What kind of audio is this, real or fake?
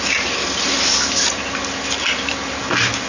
real